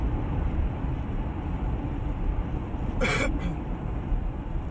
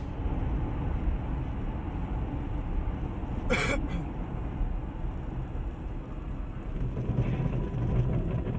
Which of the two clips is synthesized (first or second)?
first